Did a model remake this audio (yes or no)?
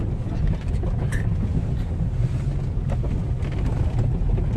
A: no